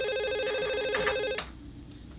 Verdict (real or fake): real